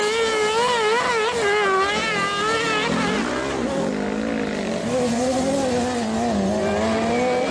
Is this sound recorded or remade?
recorded